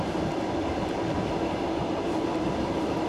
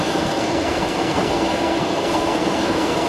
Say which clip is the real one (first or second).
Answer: first